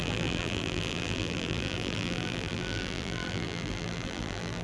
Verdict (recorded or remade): remade